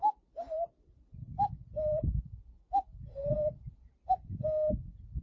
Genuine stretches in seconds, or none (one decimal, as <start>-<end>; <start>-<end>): 0.0-3.2; 3.9-5.2